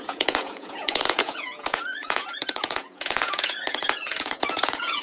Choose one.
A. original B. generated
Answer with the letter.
B